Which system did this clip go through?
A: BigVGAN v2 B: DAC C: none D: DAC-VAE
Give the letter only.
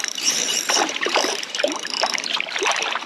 A